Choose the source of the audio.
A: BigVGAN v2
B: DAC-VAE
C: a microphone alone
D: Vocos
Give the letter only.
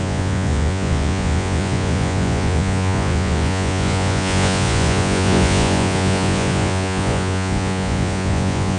D